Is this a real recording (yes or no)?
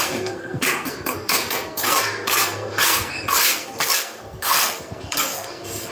no